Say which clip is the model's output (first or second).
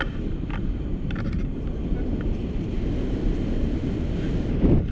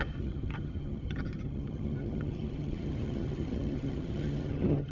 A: second